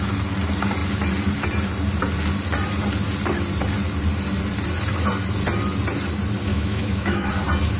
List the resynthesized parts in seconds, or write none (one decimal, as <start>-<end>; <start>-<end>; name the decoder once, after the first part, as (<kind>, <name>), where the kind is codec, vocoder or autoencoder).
6.5-7.3 (autoencoder, DAC-VAE)